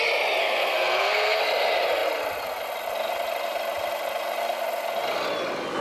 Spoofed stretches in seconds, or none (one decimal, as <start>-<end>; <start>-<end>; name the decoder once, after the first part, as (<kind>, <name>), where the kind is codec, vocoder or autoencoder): 0.4-1.4 (codec, SNAC)